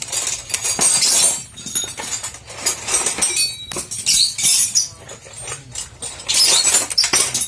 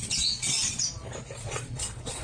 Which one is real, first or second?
first